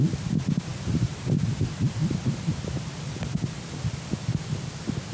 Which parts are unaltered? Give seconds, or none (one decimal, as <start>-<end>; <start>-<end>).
0.0-5.1